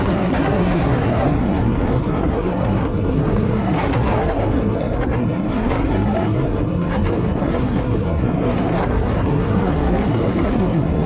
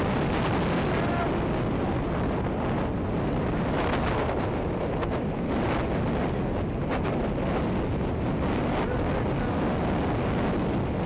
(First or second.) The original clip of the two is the second